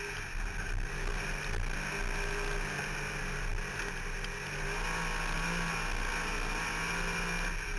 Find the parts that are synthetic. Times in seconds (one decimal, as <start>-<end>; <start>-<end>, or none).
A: none

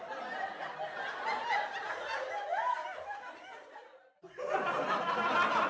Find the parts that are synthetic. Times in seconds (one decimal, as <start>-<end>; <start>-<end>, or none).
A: none

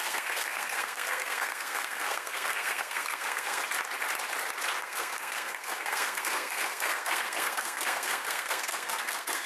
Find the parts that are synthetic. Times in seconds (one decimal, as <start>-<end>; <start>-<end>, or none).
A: 0.0-3.6; 4.8-9.5

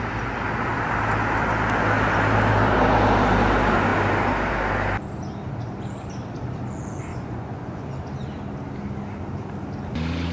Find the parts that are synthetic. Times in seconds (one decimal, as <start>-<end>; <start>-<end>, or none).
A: 7.1-7.9

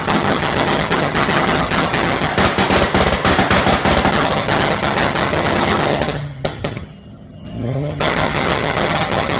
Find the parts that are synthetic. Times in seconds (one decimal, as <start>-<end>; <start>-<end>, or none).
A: 0.0-2.3; 4.1-9.4

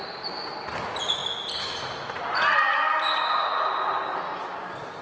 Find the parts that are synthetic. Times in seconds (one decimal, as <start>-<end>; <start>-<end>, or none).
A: none